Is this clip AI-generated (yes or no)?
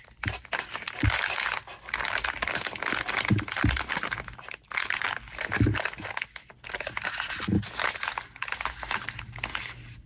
no